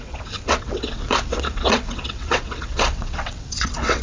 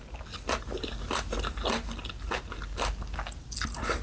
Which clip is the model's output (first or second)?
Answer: first